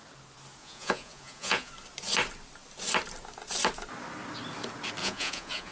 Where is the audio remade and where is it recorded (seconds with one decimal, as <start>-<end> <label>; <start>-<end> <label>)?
0.0-0.6 recorded; 0.6-1.7 remade; 1.7-5.0 recorded; 5.0-5.7 remade